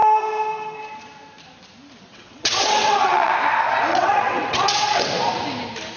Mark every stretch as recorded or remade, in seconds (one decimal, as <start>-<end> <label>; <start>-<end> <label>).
0.0-2.1 recorded; 2.1-3.3 remade; 3.3-3.9 recorded; 3.9-5.1 remade; 5.1-6.0 recorded